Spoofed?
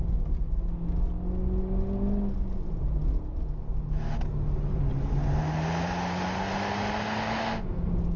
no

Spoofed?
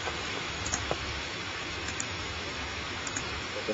yes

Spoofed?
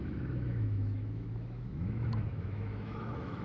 yes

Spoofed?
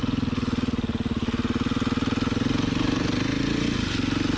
no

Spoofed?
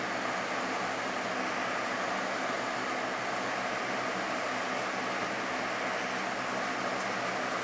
no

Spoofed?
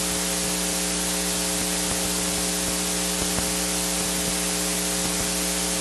no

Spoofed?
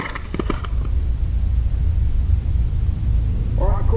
no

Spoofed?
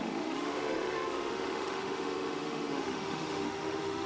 yes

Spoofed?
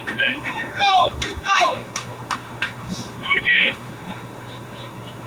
yes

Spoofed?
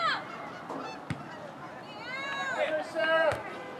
no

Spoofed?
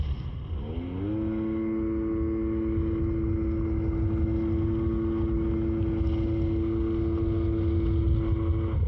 no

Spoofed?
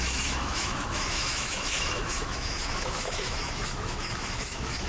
yes